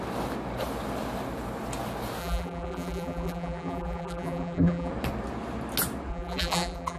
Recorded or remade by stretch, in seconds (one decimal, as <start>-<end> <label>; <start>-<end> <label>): 0.0-2.2 recorded; 2.2-4.9 remade; 4.9-6.1 recorded; 6.1-7.0 remade